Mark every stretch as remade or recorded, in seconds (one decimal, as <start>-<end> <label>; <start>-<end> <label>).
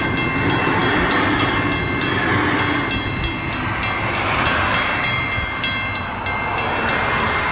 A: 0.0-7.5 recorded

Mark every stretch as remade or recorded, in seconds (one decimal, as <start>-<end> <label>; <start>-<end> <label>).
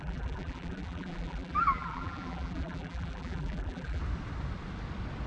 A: 0.0-4.0 remade; 4.0-5.3 recorded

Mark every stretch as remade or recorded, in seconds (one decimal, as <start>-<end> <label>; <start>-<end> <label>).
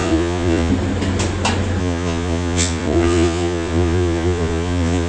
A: 0.0-0.7 remade; 0.7-1.8 recorded; 1.8-5.1 remade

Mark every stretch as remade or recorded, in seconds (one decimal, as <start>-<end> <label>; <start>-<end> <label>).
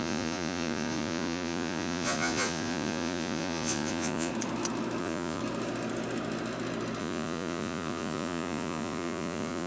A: 0.0-4.3 remade; 4.3-5.0 recorded; 5.0-5.4 remade; 5.4-7.0 recorded; 7.0-9.7 remade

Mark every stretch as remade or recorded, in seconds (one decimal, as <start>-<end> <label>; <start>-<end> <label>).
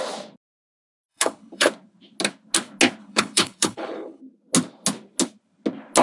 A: 0.0-1.1 recorded; 1.1-1.7 remade; 1.7-3.0 recorded; 3.0-4.2 remade; 4.2-6.0 recorded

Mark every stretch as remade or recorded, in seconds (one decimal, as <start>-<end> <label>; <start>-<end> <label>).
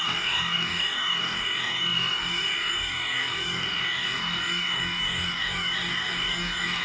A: 0.0-6.8 remade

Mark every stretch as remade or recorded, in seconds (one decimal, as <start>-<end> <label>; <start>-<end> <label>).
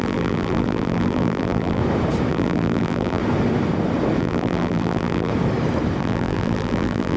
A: 0.0-1.8 remade; 1.8-2.3 recorded; 2.3-3.2 remade; 3.2-4.2 recorded; 4.2-5.3 remade; 5.3-6.0 recorded; 6.0-7.2 remade